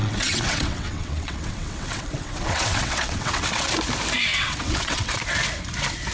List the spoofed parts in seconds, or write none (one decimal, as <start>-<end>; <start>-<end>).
0.0-3.7; 4.3-5.2